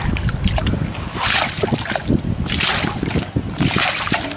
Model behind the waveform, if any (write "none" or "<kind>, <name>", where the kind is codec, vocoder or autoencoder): none